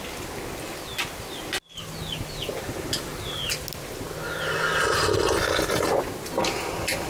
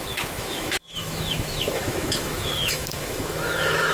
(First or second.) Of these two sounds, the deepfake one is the second